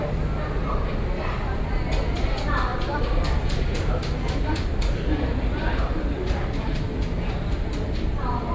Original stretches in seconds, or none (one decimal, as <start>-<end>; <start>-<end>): 0.0-2.7; 6.0-8.5